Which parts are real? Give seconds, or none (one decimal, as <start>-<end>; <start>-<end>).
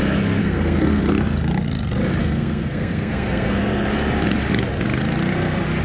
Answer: 0.0-0.4; 1.0-2.2; 3.6-5.8